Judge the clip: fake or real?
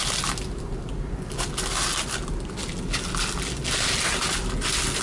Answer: real